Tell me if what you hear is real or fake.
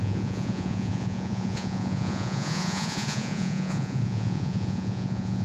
fake